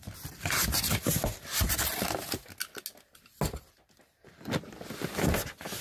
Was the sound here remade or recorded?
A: recorded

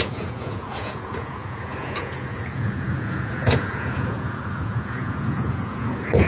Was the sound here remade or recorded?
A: remade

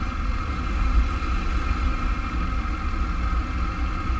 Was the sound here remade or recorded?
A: recorded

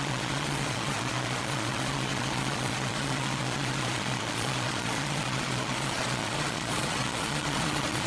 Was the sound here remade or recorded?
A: remade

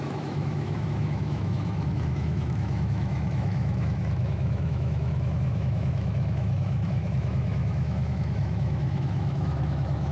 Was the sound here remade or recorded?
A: remade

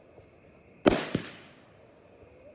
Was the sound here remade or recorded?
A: recorded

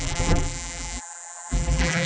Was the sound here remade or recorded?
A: remade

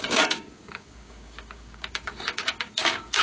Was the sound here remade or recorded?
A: remade